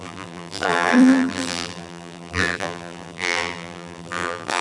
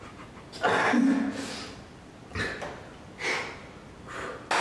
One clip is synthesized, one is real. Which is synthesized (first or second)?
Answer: first